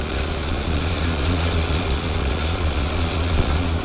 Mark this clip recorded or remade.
remade